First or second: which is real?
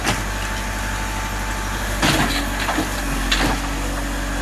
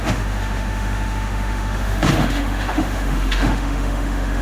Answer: first